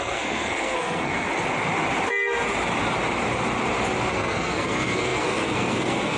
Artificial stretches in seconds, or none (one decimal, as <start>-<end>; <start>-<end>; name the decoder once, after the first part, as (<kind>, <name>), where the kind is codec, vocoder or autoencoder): 0.0-1.3 (codec, SNAC); 4.1-6.2